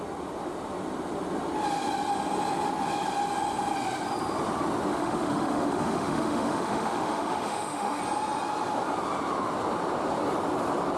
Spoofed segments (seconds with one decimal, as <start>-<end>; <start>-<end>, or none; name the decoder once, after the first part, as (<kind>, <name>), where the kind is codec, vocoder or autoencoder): 4.9-8.0 (autoencoder, DAC-VAE)